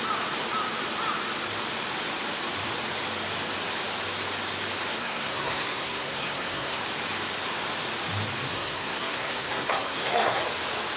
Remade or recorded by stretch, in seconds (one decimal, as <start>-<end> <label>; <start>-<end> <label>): 0.0-5.0 recorded; 5.0-6.8 remade; 6.8-8.5 recorded; 8.5-10.4 remade; 10.4-11.0 recorded